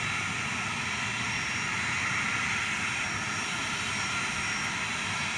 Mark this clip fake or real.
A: real